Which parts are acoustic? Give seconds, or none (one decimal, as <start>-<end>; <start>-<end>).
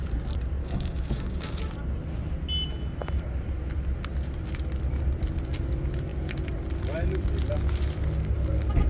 0.0-0.6; 1.6-8.9